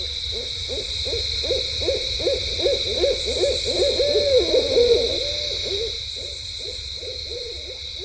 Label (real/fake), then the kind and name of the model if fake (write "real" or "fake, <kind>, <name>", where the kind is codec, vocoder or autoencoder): real